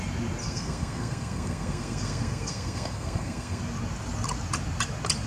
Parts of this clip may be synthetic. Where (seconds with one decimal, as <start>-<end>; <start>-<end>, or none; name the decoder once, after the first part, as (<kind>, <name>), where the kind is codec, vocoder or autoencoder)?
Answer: 0.4-3.6 (codec, SNAC)